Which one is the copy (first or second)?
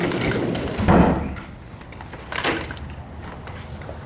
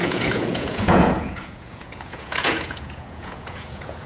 second